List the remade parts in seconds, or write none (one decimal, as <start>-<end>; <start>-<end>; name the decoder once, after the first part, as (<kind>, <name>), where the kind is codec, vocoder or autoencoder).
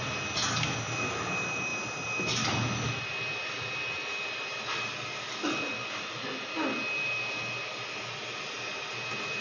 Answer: none